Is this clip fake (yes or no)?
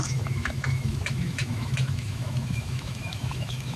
yes